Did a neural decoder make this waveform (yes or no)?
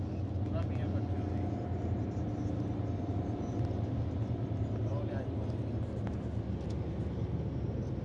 no